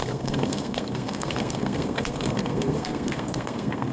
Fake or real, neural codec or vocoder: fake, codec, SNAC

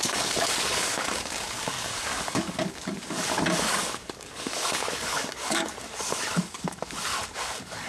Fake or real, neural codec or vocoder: fake, codec, DAC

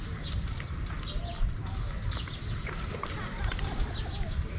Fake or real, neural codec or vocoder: real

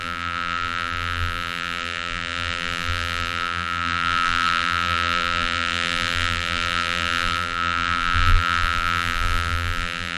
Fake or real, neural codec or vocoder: fake, vocoder, BigVGAN v2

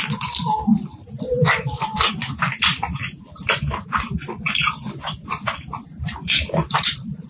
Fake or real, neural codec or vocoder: fake, vocoder, BigVGAN v2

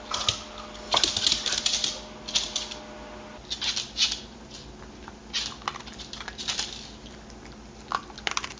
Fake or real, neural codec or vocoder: real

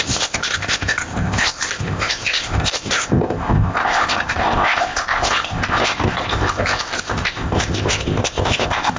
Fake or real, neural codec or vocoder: fake, codec, ZipCodec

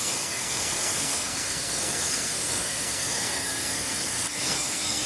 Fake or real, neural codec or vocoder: fake, codec, SNAC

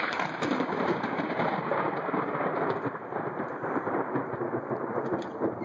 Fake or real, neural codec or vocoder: fake, vocoder, BigVGAN v2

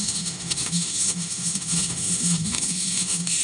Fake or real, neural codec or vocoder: fake, autoencoder, DAC-VAE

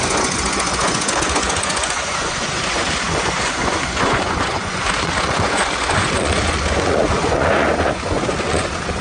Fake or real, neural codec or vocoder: fake, vocoder, Vocos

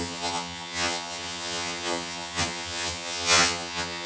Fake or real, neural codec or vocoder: fake, vocoder, HiFi-GAN